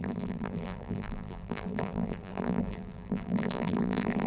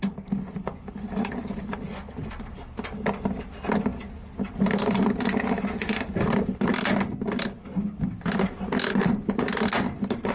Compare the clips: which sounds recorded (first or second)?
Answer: second